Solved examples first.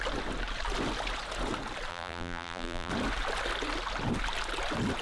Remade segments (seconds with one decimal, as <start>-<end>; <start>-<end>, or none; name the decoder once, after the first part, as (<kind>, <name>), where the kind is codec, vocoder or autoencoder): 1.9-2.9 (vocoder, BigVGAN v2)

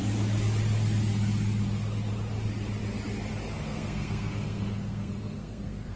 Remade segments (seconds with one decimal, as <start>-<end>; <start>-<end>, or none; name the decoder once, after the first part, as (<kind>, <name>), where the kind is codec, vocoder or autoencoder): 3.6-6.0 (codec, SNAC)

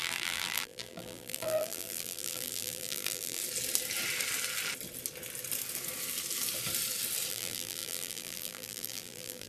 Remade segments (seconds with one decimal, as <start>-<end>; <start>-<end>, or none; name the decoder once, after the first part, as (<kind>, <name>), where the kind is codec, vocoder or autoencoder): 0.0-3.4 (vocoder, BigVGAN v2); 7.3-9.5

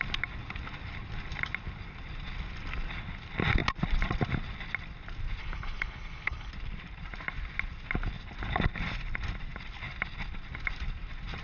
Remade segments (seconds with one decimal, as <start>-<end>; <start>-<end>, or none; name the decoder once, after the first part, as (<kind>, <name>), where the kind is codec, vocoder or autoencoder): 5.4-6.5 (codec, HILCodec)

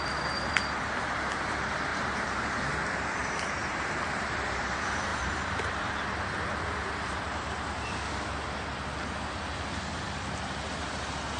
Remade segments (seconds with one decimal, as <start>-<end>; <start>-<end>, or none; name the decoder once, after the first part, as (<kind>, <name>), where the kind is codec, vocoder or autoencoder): 1.9-2.6 (vocoder, BigVGAN v2); 3.2-4.0; 5.1-5.8

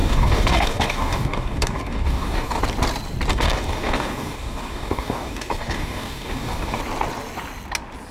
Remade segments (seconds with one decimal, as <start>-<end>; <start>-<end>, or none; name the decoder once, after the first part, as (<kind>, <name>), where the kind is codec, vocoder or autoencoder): 0.0-2.6 (codec, DAC); 3.3-6.8

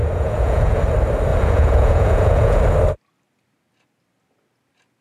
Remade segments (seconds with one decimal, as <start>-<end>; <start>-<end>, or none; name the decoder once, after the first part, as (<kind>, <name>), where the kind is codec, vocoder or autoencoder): 0.0-0.8 (vocoder, Vocos); 1.3-2.6

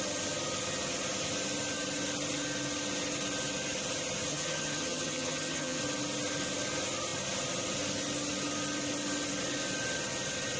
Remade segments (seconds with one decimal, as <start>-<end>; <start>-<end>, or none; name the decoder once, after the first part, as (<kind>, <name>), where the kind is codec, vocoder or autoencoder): 4.3-5.8 (vocoder, HiFi-GAN)